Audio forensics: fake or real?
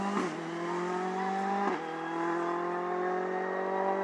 real